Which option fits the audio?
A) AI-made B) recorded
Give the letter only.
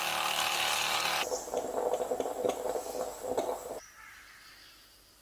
A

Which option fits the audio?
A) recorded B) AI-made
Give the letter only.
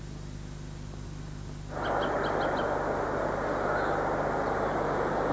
A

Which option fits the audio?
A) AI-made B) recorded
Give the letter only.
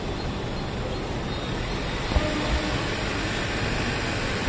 B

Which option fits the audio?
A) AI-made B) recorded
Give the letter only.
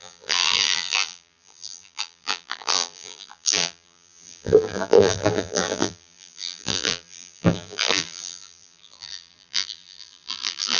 A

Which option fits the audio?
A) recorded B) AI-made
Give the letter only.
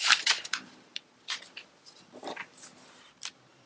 B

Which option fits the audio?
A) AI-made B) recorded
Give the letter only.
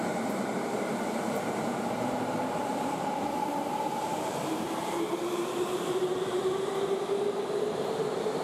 A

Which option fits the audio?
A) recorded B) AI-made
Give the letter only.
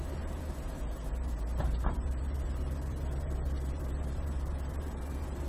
B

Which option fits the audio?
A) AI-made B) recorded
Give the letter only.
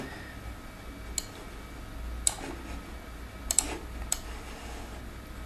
B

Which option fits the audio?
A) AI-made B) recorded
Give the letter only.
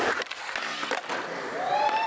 A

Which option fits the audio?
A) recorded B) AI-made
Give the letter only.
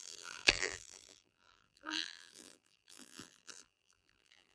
B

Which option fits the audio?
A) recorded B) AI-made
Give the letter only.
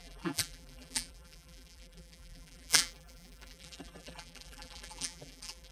B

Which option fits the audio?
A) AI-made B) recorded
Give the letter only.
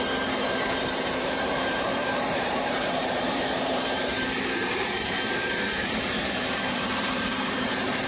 A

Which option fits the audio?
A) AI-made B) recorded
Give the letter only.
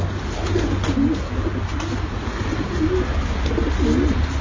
B